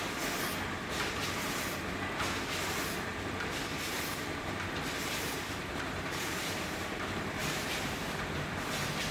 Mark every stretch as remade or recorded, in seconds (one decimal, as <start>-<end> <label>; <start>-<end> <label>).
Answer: 0.0-3.1 recorded; 3.1-7.4 remade; 7.4-9.1 recorded